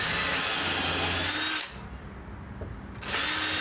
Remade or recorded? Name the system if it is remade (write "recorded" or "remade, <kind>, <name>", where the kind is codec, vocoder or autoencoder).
recorded